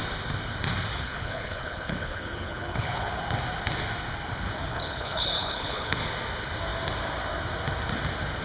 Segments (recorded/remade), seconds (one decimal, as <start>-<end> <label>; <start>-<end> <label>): 0.0-0.9 recorded; 0.9-3.1 remade; 3.1-4.6 recorded; 4.6-6.0 remade; 6.0-8.4 recorded